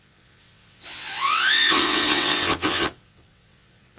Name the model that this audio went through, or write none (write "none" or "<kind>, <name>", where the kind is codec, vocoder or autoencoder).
vocoder, WaveNeXt